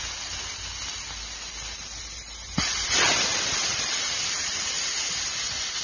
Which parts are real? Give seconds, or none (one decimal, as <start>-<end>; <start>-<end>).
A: 0.0-5.8